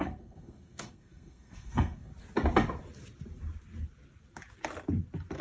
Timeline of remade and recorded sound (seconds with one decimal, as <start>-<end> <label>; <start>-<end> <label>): 0.0-2.1 remade; 2.1-5.4 recorded